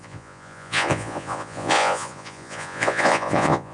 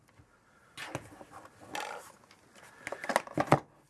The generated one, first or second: first